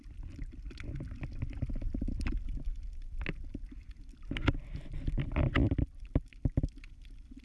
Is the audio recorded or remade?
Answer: recorded